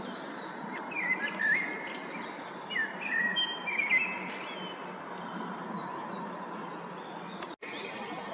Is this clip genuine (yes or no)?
yes